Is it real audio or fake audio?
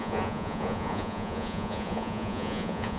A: fake